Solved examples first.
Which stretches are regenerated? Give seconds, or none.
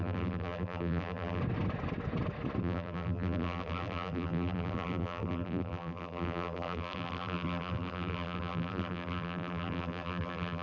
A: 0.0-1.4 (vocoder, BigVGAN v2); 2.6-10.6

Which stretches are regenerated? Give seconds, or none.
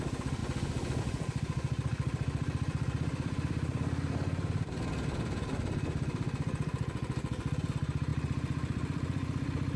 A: 0.0-0.4 (vocoder, BigVGAN v2); 1.0-9.8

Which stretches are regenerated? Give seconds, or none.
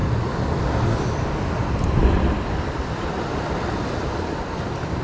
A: 2.2-5.0 (vocoder, BigVGAN v2)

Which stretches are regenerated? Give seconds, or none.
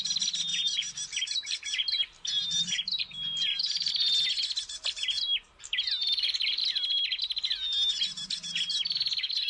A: 0.5-3.9 (vocoder, BigVGAN v2)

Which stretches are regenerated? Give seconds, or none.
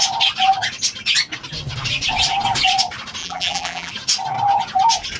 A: 3.2-3.9 (vocoder, BigVGAN v2)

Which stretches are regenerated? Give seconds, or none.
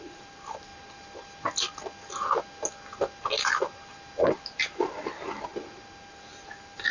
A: 0.0-0.7 (vocoder, BigVGAN v2); 4.3-5.5; 6.1-6.9